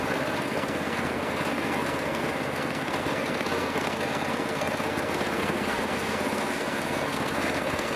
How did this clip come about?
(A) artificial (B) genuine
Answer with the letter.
A